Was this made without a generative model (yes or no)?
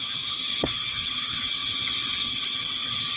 no